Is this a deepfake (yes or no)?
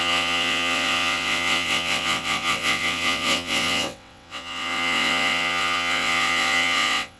yes